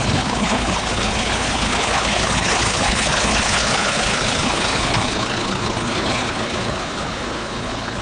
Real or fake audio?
fake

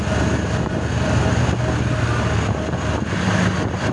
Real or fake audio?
real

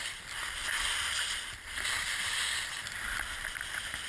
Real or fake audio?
real